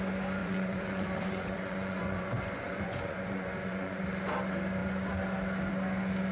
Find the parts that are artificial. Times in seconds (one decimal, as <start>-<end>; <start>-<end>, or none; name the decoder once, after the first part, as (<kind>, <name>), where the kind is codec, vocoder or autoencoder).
0.4-4.0 (vocoder, Vocos)